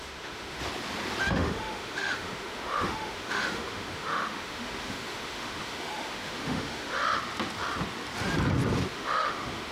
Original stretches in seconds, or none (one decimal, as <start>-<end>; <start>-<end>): 0.6-1.3; 7.0-8.9